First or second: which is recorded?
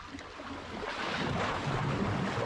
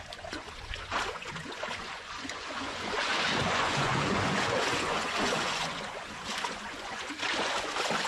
first